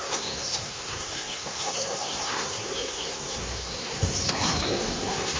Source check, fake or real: fake